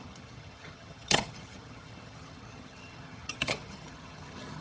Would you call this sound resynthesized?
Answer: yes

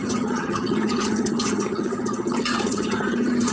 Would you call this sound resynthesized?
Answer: yes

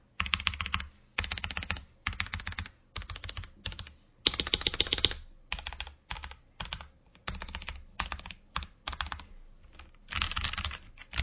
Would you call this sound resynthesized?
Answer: no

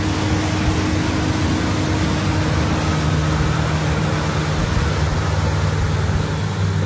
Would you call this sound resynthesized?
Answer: no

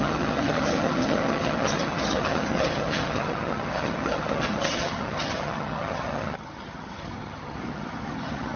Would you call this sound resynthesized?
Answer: yes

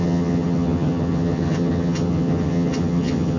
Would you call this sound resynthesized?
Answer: yes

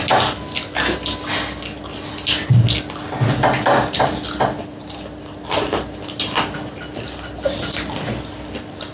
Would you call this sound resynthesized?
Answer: no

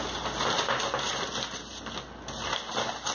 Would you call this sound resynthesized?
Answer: no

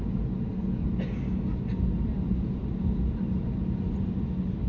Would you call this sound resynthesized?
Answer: no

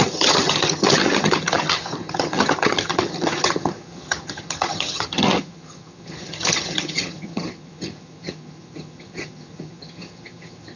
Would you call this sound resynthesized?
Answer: yes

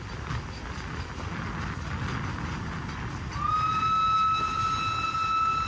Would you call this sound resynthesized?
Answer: no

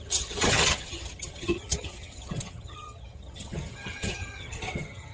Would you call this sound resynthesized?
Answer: yes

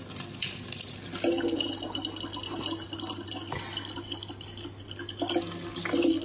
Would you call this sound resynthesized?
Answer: no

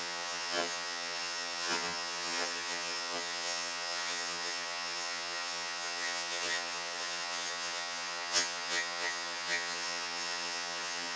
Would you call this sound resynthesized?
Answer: yes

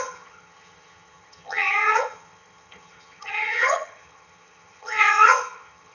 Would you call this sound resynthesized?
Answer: yes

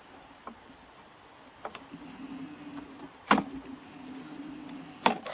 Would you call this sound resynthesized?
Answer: no